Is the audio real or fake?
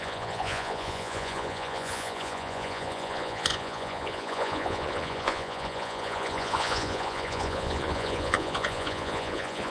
fake